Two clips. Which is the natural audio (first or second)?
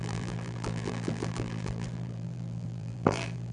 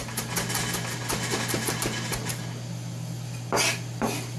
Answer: second